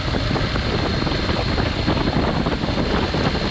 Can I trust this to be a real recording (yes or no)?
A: yes